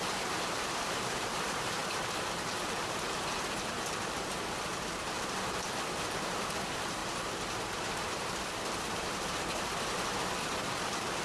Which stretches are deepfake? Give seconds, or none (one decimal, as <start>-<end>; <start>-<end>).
0.0-7.0; 7.9-11.2